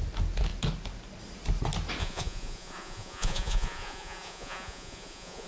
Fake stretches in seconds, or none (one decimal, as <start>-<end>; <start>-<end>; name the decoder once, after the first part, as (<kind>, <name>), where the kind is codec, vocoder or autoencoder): 2.0-5.5 (vocoder, Vocos)